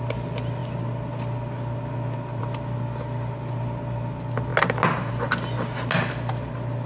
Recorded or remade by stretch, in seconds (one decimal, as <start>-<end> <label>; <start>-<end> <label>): 0.0-6.9 recorded

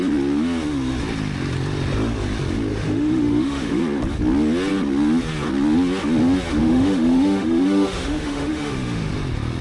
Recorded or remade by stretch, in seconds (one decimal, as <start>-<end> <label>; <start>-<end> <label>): 0.0-2.7 recorded; 2.7-3.8 remade; 3.8-6.6 recorded; 6.6-9.1 remade; 9.1-9.6 recorded

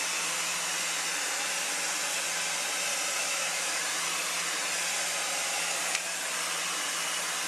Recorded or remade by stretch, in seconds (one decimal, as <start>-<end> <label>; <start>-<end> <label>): 0.0-3.2 recorded; 3.2-3.8 remade; 3.8-7.5 recorded

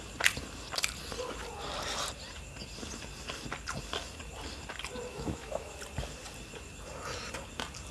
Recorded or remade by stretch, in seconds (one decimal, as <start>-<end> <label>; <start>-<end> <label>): 0.0-5.1 recorded; 5.1-5.8 remade; 5.8-7.9 recorded

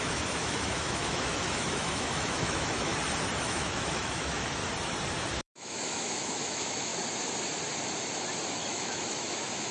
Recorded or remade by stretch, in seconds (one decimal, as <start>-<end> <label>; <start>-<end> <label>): 0.0-2.9 remade; 2.9-3.4 recorded; 3.4-4.6 remade; 4.6-5.4 recorded; 5.4-6.9 remade; 6.9-8.5 recorded; 8.5-9.7 remade